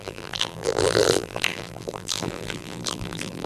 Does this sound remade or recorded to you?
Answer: remade